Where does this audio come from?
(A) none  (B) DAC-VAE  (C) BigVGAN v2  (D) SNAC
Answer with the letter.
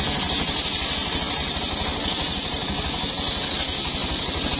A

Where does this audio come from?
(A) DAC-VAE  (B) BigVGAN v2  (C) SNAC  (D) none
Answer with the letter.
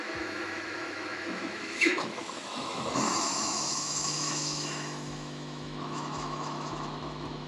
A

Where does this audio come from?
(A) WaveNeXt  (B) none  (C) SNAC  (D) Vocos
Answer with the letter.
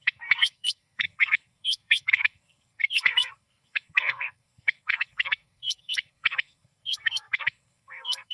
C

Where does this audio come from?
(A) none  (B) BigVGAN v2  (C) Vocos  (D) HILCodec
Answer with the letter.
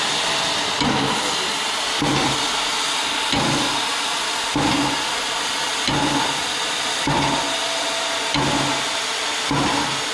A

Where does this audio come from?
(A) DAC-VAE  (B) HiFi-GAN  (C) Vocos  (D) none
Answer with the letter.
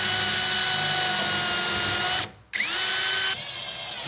D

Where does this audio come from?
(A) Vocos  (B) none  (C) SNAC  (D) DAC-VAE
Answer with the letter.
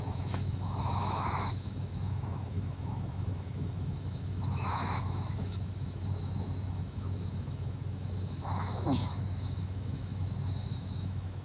D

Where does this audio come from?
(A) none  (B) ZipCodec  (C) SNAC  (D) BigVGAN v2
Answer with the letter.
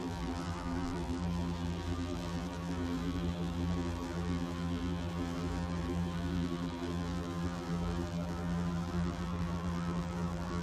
D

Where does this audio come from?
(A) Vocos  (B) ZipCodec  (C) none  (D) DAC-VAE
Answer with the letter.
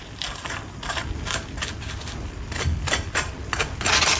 C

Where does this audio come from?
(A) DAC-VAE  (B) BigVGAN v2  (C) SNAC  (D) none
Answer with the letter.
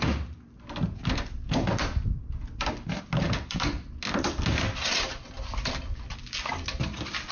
D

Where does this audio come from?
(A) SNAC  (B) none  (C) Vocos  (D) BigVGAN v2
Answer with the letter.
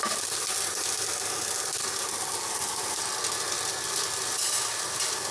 B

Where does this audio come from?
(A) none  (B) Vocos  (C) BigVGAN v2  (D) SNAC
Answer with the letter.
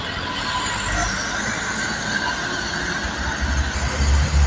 A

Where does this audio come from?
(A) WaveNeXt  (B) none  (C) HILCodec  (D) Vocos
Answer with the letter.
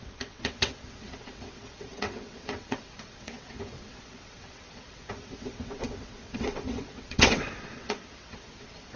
A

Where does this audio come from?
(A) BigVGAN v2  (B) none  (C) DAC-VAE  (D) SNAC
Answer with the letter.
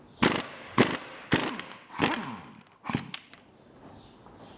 B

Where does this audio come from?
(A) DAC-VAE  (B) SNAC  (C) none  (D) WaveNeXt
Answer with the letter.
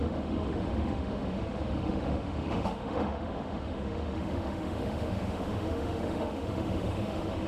A